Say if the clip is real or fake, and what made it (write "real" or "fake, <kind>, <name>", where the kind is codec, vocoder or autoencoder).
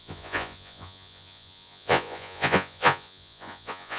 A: fake, vocoder, Vocos